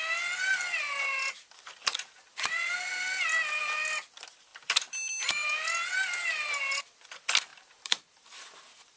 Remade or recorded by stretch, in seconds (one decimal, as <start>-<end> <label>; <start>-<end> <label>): 0.0-2.3 recorded; 2.3-2.9 remade; 2.9-7.5 recorded; 7.5-9.0 remade